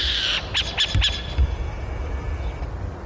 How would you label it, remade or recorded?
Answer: recorded